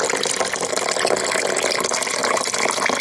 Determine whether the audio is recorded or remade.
recorded